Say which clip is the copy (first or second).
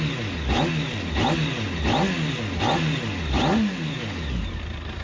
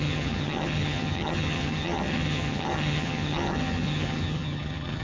second